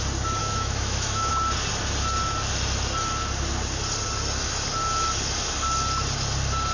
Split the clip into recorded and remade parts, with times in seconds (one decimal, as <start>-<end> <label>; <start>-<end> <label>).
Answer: 0.0-0.4 recorded; 0.4-1.3 remade; 1.3-6.7 recorded